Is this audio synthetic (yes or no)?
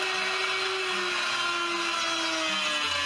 no